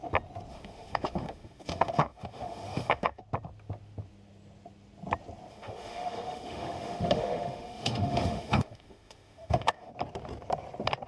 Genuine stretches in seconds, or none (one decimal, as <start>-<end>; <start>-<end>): 0.0-0.5; 3.2-5.5; 9.9-11.1

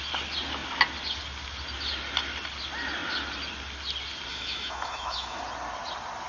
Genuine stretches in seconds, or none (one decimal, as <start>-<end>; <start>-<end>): 0.0-4.3; 5.4-6.3

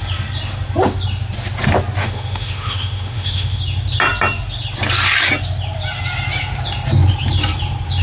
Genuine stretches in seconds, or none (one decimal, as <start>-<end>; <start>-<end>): 0.0-2.0; 3.6-8.0

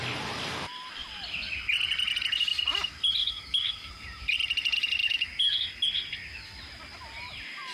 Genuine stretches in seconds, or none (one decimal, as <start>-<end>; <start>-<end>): 0.0-3.2; 3.9-5.0; 5.7-7.7

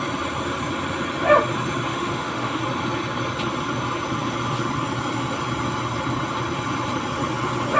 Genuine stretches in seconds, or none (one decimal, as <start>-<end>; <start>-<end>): 0.0-1.9; 2.6-7.8

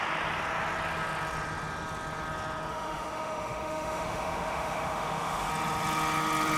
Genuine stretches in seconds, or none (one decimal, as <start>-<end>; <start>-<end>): 0.0-2.7; 5.5-6.6

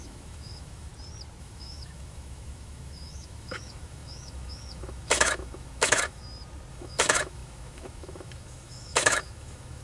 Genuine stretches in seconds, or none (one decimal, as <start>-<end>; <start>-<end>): 0.9-1.4; 6.2-6.7

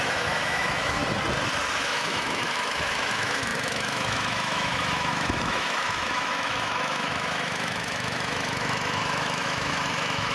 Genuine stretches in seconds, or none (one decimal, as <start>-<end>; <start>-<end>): 1.0-1.7